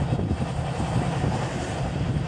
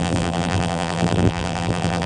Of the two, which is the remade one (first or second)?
second